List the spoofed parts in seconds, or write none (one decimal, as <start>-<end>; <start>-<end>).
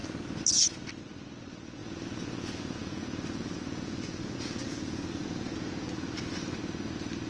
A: 1.8-6.2